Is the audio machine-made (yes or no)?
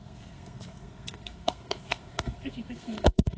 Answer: yes